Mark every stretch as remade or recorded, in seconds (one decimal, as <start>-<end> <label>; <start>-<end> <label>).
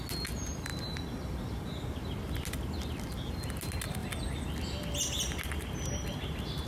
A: 0.0-6.7 recorded